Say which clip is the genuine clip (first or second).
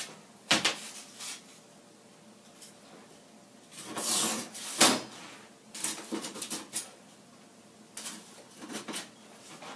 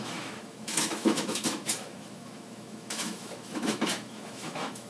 first